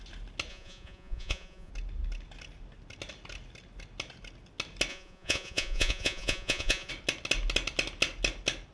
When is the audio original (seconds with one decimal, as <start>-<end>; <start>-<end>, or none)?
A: 0.0-0.5; 1.7-4.9; 6.9-8.7